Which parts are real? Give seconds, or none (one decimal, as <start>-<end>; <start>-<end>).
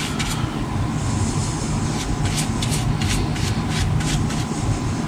0.0-5.1